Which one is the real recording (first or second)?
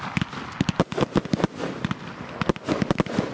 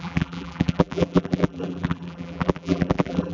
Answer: first